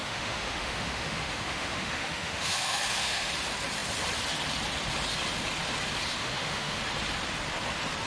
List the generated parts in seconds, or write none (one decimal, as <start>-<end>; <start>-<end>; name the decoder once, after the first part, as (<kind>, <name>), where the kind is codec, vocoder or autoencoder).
0.0-3.3 (autoencoder, DAC-VAE); 6.2-6.8